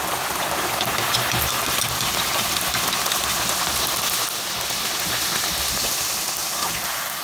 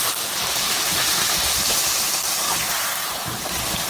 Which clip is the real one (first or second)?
first